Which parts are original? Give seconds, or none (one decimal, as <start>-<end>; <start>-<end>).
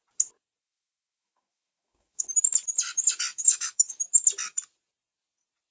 0.0-0.6; 2.2-3.3; 4.0-5.7